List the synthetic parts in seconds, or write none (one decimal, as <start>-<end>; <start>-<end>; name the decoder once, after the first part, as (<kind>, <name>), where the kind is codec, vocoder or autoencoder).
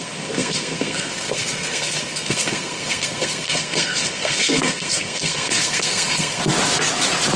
0.0-6.4 (codec, SNAC)